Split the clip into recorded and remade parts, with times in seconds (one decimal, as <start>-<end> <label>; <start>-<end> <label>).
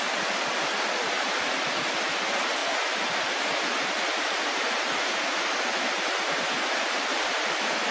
0.0-7.9 recorded